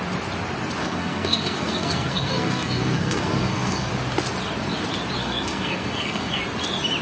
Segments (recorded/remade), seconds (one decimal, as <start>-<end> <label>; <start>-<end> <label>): 0.0-0.8 recorded; 0.8-3.9 remade; 3.9-5.2 recorded; 5.2-6.4 remade; 6.4-7.0 recorded